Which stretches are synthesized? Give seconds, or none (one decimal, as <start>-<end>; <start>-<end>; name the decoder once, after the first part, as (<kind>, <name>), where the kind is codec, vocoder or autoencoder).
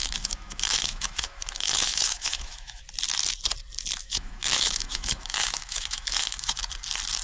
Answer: 0.0-2.8 (autoencoder, DAC-VAE); 4.0-6.6